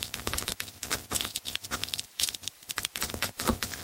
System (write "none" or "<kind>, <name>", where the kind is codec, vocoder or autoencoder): vocoder, BigVGAN v2